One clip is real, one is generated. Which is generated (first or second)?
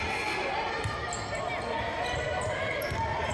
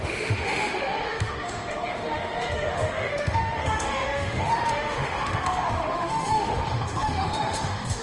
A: second